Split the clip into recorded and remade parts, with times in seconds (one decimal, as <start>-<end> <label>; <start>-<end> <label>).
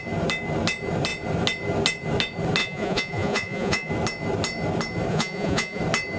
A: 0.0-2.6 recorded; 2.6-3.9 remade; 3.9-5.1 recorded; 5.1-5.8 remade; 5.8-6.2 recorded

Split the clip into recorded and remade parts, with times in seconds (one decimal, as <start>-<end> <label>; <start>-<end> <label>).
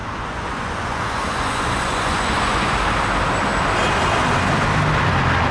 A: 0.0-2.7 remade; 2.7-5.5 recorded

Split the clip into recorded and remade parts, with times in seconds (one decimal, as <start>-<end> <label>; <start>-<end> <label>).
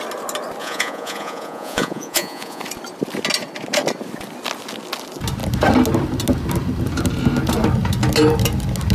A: 0.0-0.6 recorded; 0.6-2.6 remade; 2.6-8.9 recorded